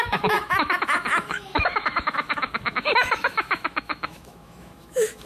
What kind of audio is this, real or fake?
fake